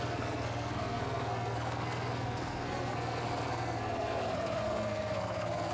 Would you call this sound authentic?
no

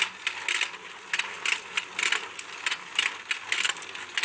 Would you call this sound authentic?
yes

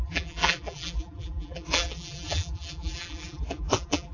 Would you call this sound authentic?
no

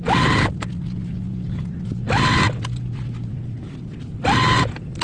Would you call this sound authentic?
yes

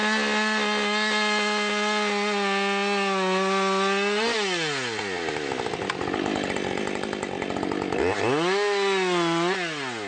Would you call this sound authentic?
yes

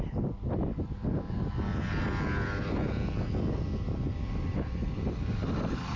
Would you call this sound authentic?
yes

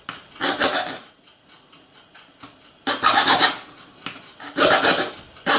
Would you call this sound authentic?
yes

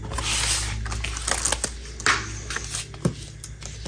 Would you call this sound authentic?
yes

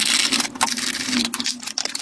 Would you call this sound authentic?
yes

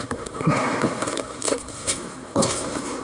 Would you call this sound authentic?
no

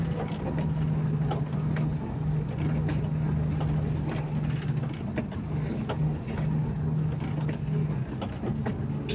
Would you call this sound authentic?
yes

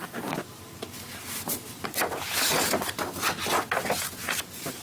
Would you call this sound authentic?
yes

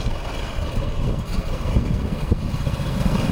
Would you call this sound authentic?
no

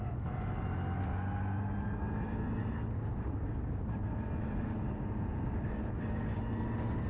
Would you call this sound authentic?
yes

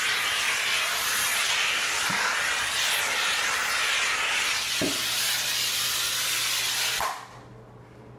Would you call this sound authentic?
yes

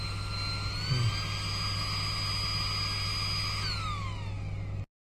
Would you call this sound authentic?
yes